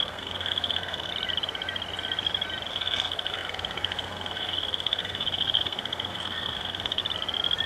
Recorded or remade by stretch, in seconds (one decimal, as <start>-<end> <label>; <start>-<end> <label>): 0.0-1.1 remade; 1.1-2.7 recorded; 2.7-7.0 remade; 7.0-7.7 recorded